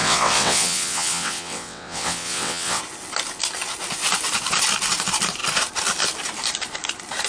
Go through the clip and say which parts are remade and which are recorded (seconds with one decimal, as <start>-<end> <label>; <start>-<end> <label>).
0.0-2.8 remade; 2.8-7.3 recorded